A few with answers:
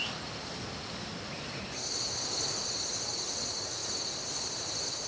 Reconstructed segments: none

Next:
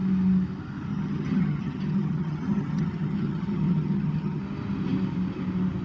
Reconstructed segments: 0.9-4.4

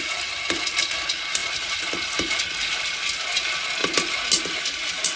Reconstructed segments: none

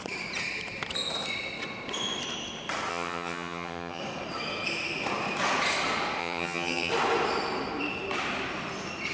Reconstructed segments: 2.9-4.0; 6.2-6.9

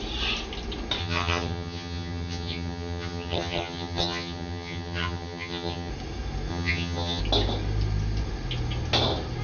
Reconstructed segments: 1.0-5.9; 6.5-7.2

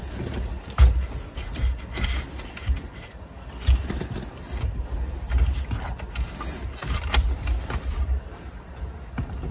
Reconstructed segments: none